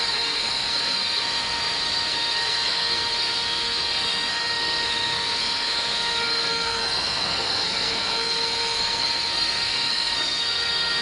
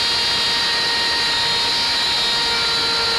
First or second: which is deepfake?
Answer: first